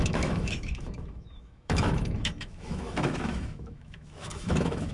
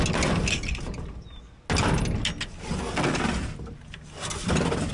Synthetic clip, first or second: first